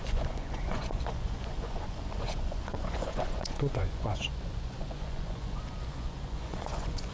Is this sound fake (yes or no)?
yes